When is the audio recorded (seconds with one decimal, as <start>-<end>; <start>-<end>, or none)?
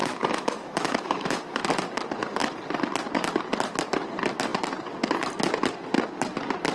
1.6-6.7